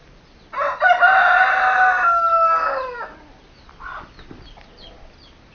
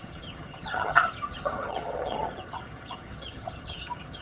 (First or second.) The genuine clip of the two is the first